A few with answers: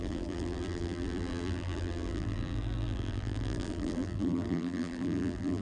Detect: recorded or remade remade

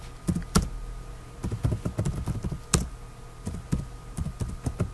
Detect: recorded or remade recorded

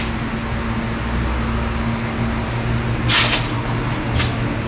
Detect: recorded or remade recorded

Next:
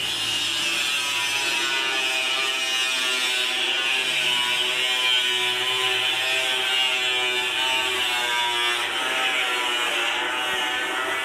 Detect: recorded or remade recorded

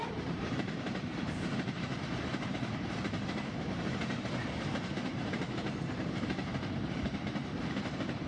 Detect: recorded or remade remade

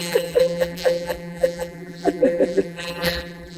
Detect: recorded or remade remade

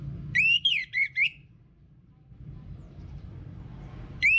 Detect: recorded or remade remade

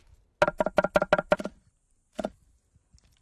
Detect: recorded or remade recorded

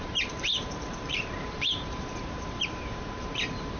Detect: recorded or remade remade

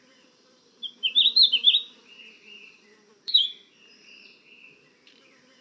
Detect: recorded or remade remade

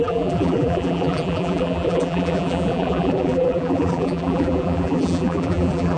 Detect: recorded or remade remade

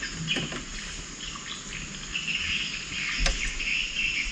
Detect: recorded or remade recorded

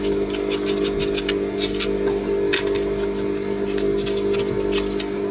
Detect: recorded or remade recorded